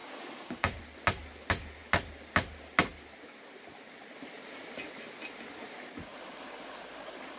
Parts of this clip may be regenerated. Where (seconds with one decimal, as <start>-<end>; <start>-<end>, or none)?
0.0-0.8

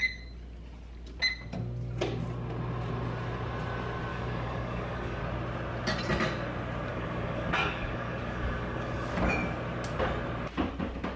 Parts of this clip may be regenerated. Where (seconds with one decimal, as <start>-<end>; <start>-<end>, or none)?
4.1-5.2; 6.9-9.1